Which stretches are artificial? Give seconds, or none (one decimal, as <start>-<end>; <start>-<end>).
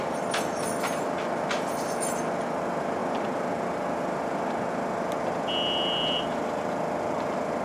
none